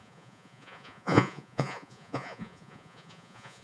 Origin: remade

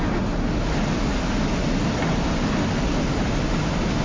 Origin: recorded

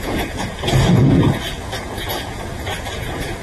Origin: remade